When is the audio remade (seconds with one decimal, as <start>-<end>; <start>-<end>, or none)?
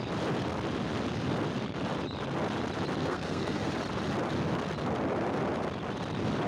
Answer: 3.0-3.7